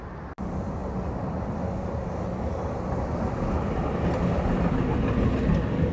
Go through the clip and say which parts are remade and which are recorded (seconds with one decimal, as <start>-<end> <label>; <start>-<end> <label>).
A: 0.0-5.9 recorded